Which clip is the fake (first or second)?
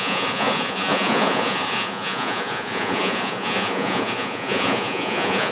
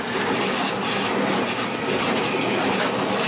first